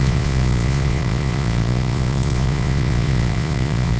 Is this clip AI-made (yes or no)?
yes